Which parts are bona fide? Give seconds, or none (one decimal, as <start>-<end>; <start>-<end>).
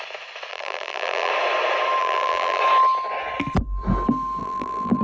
0.0-0.5; 1.3-2.0; 2.6-4.4